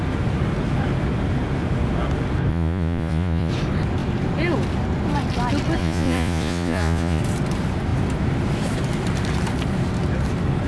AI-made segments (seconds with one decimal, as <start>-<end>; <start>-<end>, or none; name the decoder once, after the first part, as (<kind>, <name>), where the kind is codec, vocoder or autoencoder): 2.5-3.5 (vocoder, Vocos); 5.8-7.2